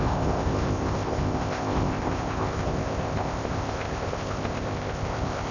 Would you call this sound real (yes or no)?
no